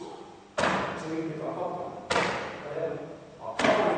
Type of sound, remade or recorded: recorded